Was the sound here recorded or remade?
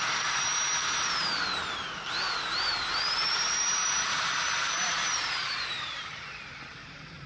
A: remade